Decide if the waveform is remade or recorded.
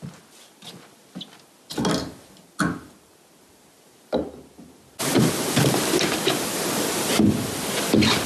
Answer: recorded